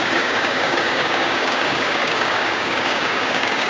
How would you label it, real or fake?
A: fake